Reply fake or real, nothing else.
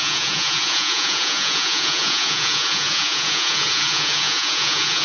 fake